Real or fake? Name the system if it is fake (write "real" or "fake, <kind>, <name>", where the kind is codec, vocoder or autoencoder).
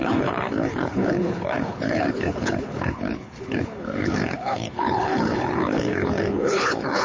fake, codec, HILCodec